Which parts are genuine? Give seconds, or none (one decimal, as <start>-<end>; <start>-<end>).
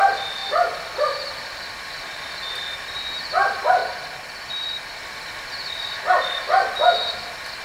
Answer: 0.0-7.6